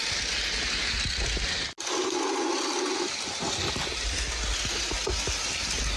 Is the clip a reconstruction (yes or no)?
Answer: no